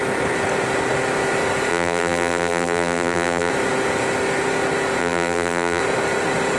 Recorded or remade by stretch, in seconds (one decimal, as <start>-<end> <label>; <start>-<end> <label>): 0.0-1.7 recorded; 1.7-3.5 remade; 3.5-5.0 recorded; 5.0-5.8 remade; 5.8-6.6 recorded